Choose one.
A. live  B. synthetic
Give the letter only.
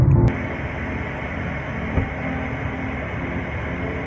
A